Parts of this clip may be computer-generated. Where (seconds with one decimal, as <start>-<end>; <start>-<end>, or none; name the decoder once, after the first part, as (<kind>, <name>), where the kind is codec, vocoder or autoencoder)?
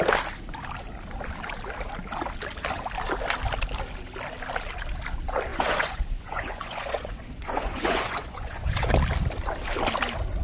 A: 5.5-8.9 (vocoder, Vocos)